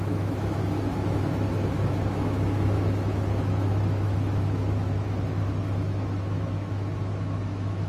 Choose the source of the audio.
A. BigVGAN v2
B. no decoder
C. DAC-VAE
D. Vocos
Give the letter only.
C